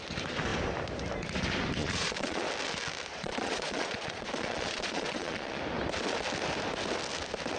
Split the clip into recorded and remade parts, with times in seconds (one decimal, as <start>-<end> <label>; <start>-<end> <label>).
0.0-1.8 recorded; 1.8-2.5 remade; 2.5-3.1 recorded; 3.1-5.6 remade; 5.6-7.6 recorded